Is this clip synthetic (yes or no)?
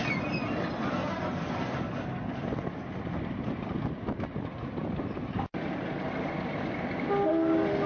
no